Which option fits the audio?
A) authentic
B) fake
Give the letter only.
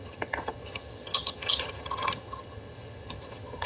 B